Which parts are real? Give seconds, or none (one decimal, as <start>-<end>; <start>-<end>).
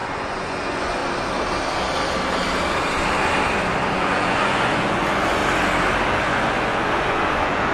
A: 1.0-4.0; 5.4-6.1